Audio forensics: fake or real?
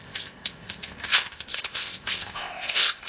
fake